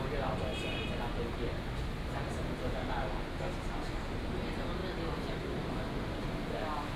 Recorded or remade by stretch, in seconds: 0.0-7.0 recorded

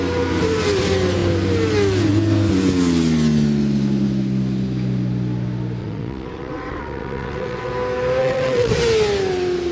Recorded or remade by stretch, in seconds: 0.0-5.8 recorded; 5.8-7.7 remade; 7.7-8.2 recorded; 8.2-8.7 remade; 8.7-9.7 recorded

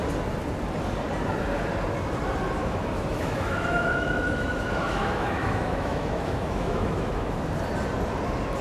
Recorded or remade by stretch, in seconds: 0.0-2.6 recorded; 2.6-7.3 remade; 7.3-8.6 recorded